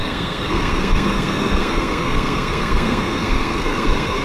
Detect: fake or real fake